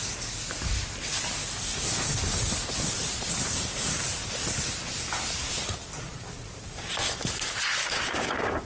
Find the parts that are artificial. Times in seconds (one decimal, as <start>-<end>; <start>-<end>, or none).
7.8-8.6